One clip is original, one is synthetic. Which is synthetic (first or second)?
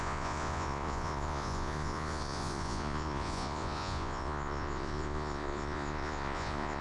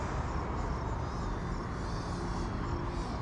first